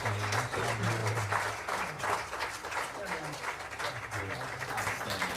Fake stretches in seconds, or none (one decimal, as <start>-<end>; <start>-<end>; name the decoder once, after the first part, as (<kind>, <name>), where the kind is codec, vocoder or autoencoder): none